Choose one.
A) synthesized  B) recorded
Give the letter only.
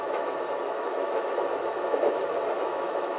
A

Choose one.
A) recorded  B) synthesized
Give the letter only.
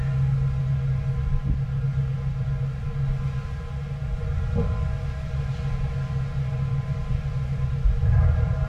A